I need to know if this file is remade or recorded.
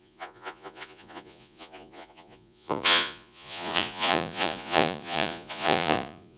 remade